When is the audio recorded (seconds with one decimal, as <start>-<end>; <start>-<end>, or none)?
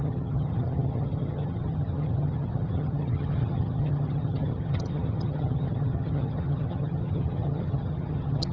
none